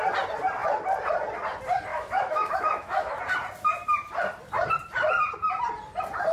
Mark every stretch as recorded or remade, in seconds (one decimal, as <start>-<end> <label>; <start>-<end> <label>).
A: 0.0-1.9 recorded; 1.9-3.2 remade; 3.2-6.3 recorded